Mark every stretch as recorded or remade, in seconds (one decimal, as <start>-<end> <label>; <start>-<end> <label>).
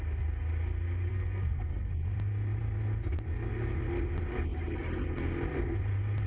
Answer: 0.0-1.1 recorded; 1.1-1.9 remade; 1.9-6.3 recorded